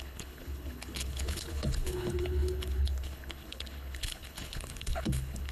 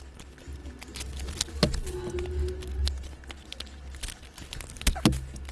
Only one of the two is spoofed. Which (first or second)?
first